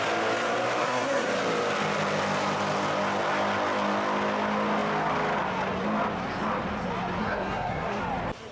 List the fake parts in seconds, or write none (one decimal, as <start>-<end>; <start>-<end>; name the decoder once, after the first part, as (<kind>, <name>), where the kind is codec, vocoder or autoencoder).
0.8-1.3 (codec, SNAC); 7.2-8.0